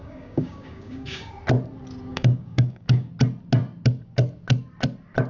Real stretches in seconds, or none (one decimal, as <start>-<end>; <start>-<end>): 1.3-2.1; 3.1-5.3